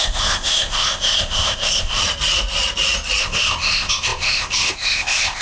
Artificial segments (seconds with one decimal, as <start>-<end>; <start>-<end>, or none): 0.0-2.0; 3.2-5.4